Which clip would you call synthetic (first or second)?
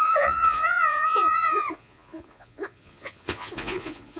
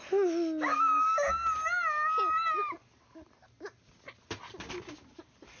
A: first